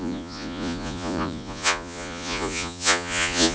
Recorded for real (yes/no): no